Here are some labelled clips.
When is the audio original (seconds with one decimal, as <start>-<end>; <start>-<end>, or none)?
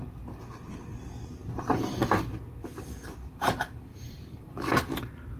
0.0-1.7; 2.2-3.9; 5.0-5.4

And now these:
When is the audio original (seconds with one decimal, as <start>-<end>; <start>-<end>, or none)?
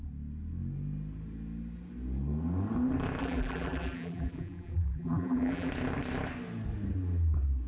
0.0-3.2; 5.7-7.7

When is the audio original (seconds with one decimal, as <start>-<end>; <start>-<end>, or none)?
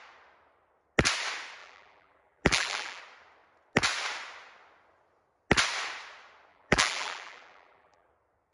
0.0-1.6; 3.0-6.5; 8.1-8.5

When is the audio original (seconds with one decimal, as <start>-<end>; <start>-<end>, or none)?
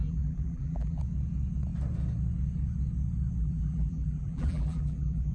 1.0-3.4